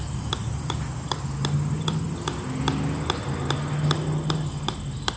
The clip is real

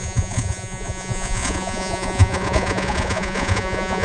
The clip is fake